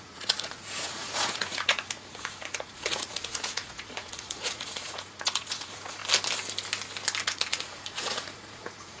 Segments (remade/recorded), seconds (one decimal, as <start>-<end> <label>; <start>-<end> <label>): 0.0-6.0 remade; 6.0-7.2 recorded; 7.2-9.0 remade